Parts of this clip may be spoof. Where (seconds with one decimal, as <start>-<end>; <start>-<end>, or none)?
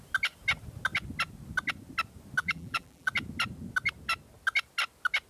2.4-3.1